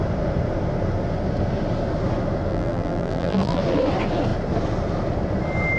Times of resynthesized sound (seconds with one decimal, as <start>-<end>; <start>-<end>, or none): 2.5-3.6